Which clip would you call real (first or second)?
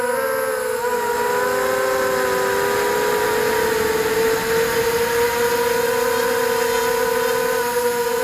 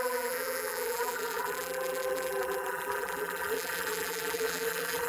first